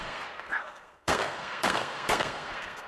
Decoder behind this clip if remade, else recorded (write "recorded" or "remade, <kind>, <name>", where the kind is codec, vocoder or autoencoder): remade, codec, SNAC